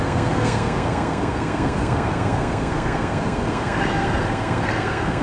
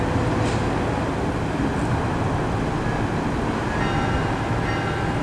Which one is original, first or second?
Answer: second